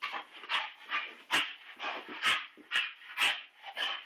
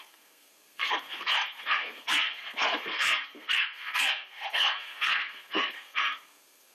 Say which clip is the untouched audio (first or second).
first